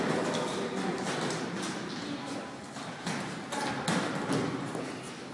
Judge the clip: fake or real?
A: real